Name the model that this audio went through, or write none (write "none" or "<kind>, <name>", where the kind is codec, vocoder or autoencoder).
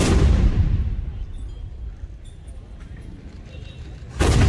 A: none